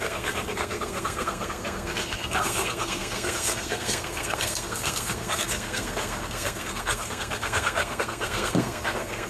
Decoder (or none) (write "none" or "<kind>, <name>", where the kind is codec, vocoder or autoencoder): codec, SNAC